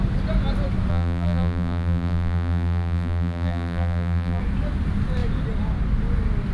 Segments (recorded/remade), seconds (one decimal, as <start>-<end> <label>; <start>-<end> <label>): 0.0-0.9 recorded; 0.9-4.4 remade; 4.4-6.5 recorded